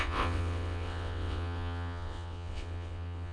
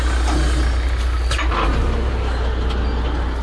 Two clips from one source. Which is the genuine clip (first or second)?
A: second